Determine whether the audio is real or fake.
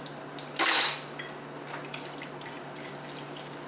real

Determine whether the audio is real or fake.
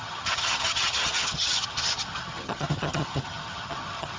fake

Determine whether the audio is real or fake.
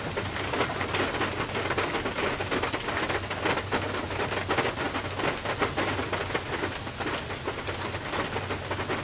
real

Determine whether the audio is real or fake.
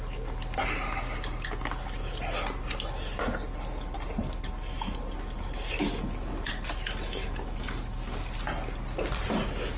real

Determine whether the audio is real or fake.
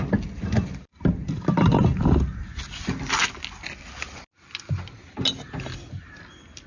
real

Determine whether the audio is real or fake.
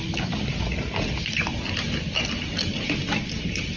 real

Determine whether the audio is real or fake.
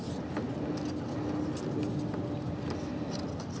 real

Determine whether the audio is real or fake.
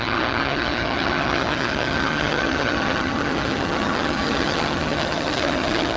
fake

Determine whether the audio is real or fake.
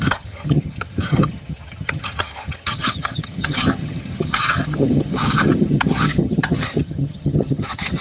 fake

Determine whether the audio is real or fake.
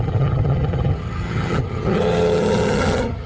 fake